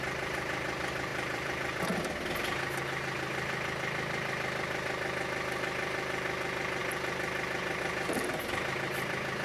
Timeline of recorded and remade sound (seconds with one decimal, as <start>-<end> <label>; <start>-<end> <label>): 0.0-1.1 recorded; 1.1-2.0 remade; 2.0-9.4 recorded